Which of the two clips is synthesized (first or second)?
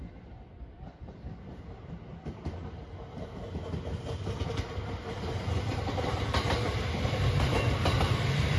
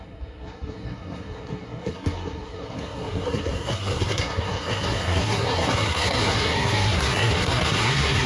second